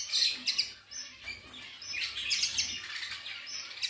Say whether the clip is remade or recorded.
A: recorded